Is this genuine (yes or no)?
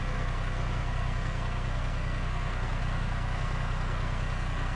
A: no